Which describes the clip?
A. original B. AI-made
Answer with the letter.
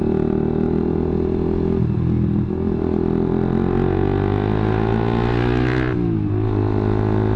A